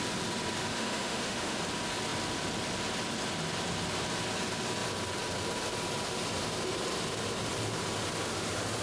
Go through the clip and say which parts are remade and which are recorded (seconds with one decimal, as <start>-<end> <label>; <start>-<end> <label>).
0.0-0.7 recorded; 0.7-1.6 remade; 1.6-8.8 recorded